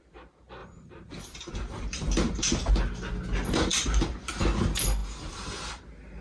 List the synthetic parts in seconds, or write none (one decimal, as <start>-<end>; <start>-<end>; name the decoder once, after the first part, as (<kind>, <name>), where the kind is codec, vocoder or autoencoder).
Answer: 0.6-2.7 (vocoder, BigVGAN v2)